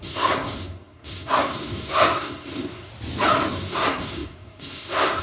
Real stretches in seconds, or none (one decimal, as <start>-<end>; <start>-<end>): 2.9-3.5